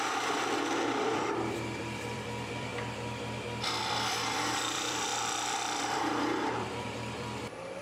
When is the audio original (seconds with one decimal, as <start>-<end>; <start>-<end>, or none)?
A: 2.7-3.8; 5.1-5.8